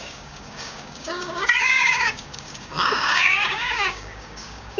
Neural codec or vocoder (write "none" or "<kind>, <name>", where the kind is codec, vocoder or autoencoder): codec, DAC